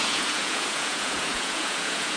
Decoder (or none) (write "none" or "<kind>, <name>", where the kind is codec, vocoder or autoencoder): vocoder, Vocos